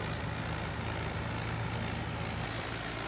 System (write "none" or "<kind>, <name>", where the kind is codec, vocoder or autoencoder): none